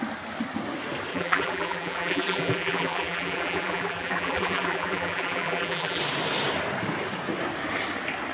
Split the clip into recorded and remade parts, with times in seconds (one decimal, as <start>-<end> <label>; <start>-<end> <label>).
0.0-1.1 recorded; 1.1-6.0 remade; 6.0-8.3 recorded